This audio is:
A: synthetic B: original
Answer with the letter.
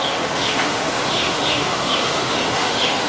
A